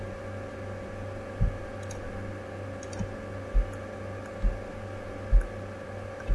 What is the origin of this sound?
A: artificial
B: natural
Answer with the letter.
B